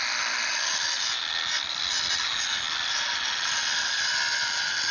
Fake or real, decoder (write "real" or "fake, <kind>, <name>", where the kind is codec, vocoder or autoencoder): real